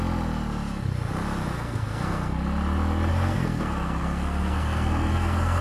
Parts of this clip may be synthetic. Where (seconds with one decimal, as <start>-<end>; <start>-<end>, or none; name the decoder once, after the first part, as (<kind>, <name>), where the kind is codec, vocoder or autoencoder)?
1.5-2.4 (codec, SNAC); 3.1-5.6